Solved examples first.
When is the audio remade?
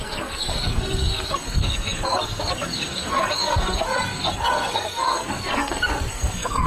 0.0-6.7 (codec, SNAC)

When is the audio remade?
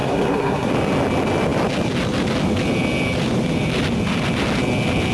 0.0-0.7 (codec, SNAC)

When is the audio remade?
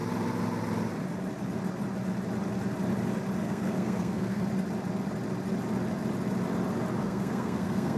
3.4-4.4 (codec, SNAC); 7.0-8.0